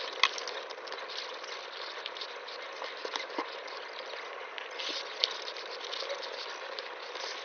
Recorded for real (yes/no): yes